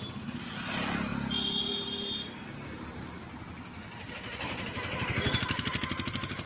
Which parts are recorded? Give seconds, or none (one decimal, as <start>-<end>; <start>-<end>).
0.0-6.5